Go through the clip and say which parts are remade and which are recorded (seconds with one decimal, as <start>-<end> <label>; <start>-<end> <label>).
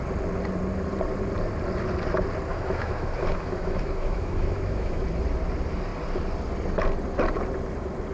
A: 0.0-2.5 recorded; 2.5-5.0 remade; 5.0-8.1 recorded